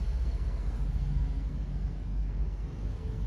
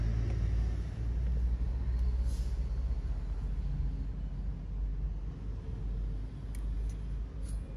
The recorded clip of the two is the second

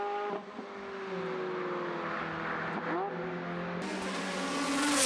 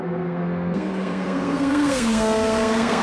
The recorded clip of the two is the first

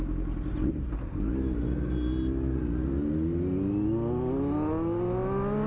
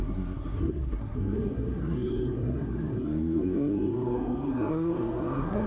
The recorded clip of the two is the first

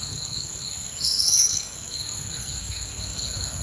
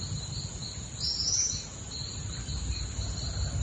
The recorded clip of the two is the second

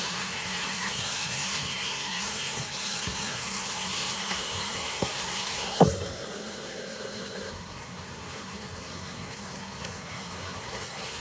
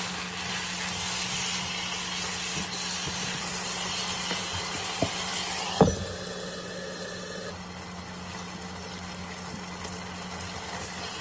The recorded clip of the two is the second